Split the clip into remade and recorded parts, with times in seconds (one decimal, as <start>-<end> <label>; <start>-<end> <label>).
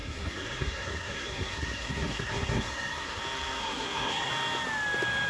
0.0-3.2 remade; 3.2-3.6 recorded; 3.6-4.3 remade; 4.3-5.3 recorded